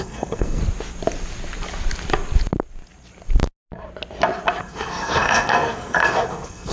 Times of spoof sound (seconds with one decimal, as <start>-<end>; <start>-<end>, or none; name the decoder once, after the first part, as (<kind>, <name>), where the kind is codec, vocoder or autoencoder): 0.0-0.6 (codec, SNAC); 4.6-6.7